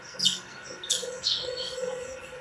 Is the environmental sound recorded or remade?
remade